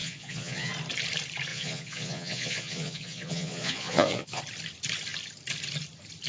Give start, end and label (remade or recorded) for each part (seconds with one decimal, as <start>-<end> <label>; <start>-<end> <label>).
0.0-0.7 remade; 0.7-1.5 recorded; 1.5-4.4 remade; 4.4-6.3 recorded